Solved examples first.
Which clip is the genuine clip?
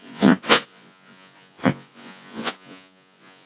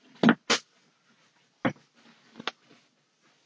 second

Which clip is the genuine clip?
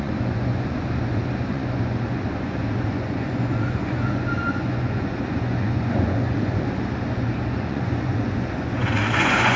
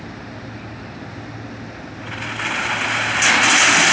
second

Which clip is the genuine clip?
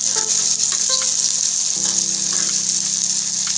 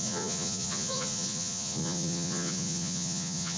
first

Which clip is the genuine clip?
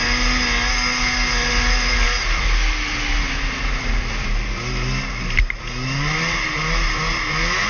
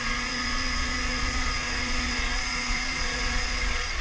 first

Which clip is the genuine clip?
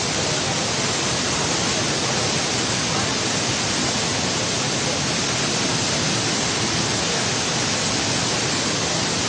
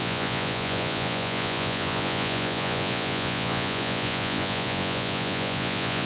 first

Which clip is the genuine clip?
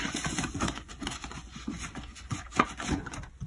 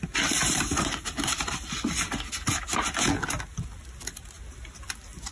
second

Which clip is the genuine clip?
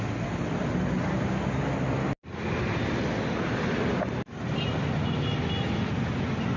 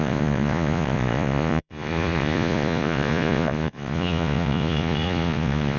first